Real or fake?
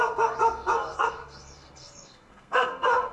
fake